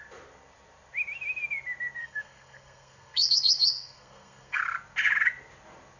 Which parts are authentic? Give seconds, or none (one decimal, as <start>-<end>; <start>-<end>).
0.0-2.0; 4.6-6.0